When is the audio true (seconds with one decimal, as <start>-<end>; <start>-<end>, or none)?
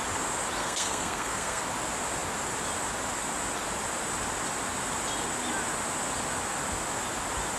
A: 0.0-0.6; 1.6-7.6